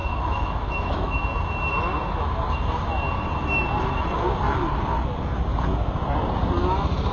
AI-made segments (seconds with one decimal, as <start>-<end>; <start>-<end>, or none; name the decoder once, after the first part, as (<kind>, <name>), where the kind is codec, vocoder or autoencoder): 0.0-1.2 (autoencoder, DAC-VAE)